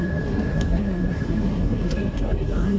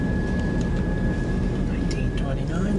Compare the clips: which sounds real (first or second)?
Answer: second